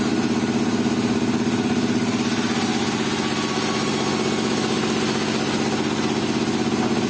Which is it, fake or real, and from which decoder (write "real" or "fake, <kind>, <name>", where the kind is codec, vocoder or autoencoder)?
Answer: real